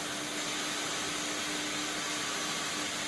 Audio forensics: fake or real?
real